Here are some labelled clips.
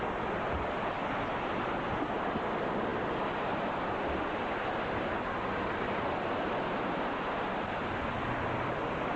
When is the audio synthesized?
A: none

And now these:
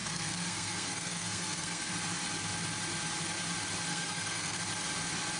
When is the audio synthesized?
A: 0.0-1.9 (codec, SNAC); 3.9-4.6

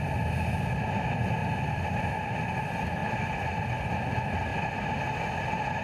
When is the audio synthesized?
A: 1.4-2.0 (vocoder, BigVGAN v2); 3.0-3.9

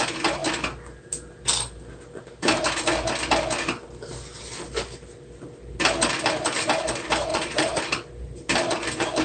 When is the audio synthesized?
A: 7.3-7.8 (vocoder, Vocos)